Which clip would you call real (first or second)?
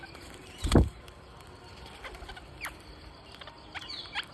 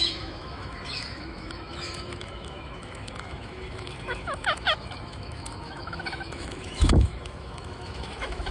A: first